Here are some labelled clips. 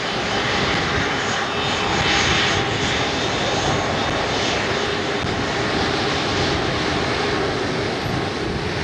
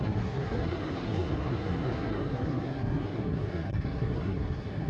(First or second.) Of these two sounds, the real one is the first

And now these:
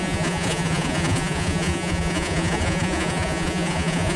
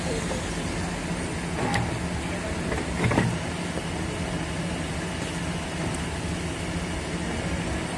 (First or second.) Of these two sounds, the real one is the second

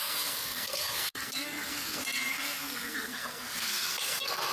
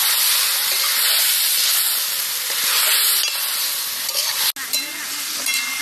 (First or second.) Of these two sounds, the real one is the second